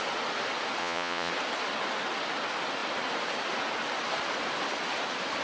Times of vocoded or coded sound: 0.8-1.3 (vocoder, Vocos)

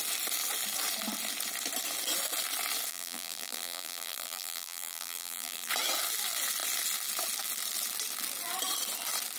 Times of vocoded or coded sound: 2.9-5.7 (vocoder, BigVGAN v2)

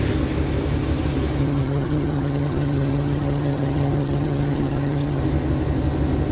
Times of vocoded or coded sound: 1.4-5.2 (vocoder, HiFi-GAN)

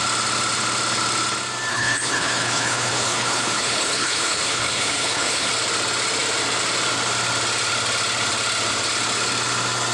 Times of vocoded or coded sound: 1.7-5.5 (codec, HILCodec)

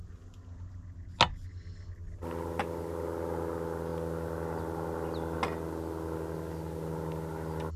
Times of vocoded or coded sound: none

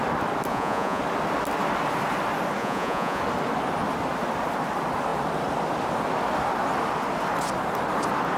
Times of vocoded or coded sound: 0.5-1.0 (vocoder, Vocos); 2.6-3.2